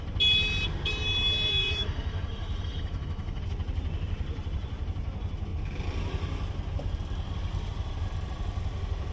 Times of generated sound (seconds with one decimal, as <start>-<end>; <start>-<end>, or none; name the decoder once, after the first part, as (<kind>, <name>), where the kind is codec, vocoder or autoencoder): 1.5-3.4 (autoencoder, DAC-VAE)